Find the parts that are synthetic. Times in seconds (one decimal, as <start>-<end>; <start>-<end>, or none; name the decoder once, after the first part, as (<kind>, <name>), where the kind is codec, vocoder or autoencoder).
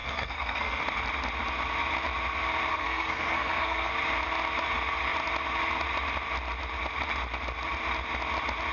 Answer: 0.0-0.8 (codec, SNAC); 2.7-3.9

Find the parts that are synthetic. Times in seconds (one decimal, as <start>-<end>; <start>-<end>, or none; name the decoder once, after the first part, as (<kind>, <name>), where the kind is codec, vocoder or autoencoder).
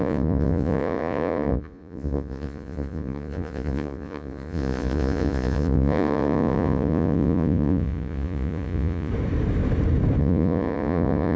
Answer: 0.0-9.1 (vocoder, Vocos); 10.2-11.4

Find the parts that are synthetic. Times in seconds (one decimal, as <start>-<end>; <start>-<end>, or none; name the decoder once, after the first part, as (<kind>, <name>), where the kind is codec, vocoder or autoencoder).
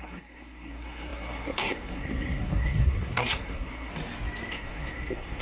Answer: 0.0-3.9 (codec, SNAC); 4.5-5.4